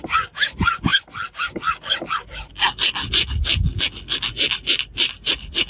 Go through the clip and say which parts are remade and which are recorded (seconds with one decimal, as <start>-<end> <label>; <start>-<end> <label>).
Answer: 0.0-5.7 recorded

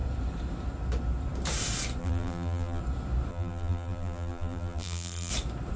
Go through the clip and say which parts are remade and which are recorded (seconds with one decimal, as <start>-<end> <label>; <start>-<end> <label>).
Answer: 0.0-2.0 recorded; 2.0-2.8 remade; 2.8-3.3 recorded; 3.3-5.3 remade; 5.3-5.8 recorded

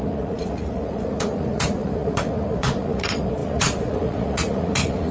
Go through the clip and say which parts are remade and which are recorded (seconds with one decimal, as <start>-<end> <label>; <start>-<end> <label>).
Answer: 0.0-5.1 remade

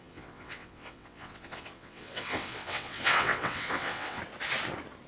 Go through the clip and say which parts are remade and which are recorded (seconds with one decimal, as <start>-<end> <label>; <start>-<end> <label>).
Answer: 0.0-4.2 remade; 4.2-5.1 recorded

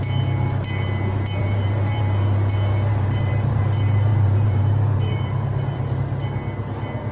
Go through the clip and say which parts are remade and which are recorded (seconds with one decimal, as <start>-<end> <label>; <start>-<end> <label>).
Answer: 0.0-1.4 recorded; 1.4-2.0 remade; 2.0-2.9 recorded; 2.9-3.6 remade; 3.6-4.1 recorded; 4.1-6.0 remade; 6.0-7.1 recorded

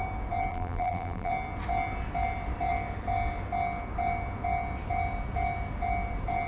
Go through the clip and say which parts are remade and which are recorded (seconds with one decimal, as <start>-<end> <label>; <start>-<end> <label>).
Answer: 0.0-0.5 recorded; 0.5-1.3 remade; 1.3-6.5 recorded

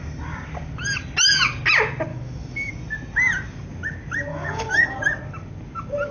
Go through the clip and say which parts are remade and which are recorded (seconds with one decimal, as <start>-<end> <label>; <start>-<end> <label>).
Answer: 0.0-2.1 recorded; 2.1-2.7 remade; 2.7-4.3 recorded; 4.3-5.0 remade; 5.0-6.1 recorded